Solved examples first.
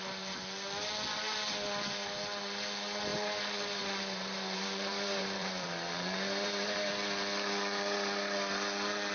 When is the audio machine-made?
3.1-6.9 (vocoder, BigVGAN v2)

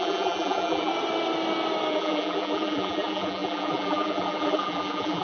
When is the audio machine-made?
0.0-0.9 (vocoder, BigVGAN v2); 1.9-5.2

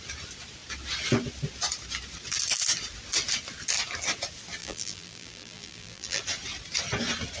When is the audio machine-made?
4.6-6.2 (vocoder, BigVGAN v2)

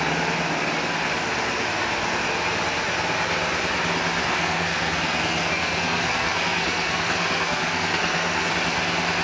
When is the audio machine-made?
4.2-8.5 (codec, SNAC)

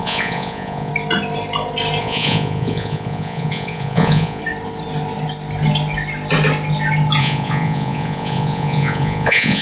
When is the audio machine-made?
0.0-0.9 (vocoder, Vocos); 2.0-4.4; 7.2-9.6

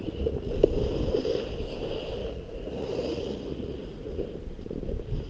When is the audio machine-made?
0.0-0.5 (vocoder, Vocos); 2.2-4.2